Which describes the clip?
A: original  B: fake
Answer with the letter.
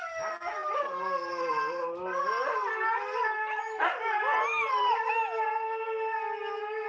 A